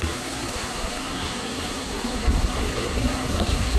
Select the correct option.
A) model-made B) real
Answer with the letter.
A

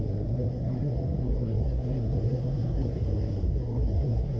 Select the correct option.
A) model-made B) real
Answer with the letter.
A